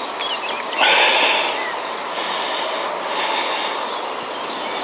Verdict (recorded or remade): recorded